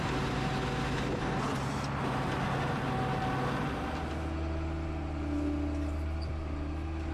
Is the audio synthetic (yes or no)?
no